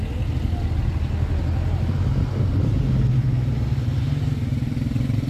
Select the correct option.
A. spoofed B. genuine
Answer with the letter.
B